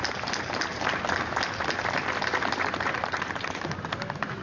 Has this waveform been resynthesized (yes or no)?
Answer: no